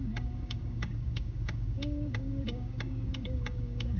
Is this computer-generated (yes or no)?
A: yes